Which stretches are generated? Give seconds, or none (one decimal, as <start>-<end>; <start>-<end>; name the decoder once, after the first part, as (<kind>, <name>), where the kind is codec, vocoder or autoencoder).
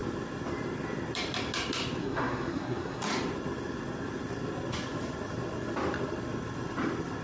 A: 2.0-3.0 (codec, SNAC)